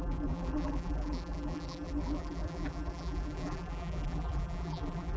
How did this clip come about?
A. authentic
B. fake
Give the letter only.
B